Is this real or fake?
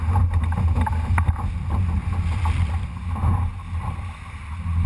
real